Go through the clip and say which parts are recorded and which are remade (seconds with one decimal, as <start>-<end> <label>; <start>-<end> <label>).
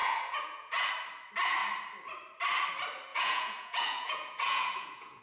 0.0-0.9 remade; 0.9-3.1 recorded; 3.1-5.2 remade